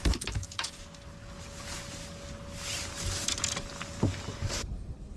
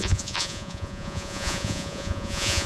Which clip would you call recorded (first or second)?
first